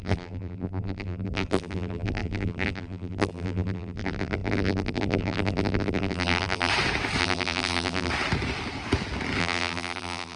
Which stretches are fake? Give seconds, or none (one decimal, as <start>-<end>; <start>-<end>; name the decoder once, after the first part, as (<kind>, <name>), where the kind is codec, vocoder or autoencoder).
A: 0.0-6.7 (vocoder, BigVGAN v2); 7.2-8.1; 9.4-10.4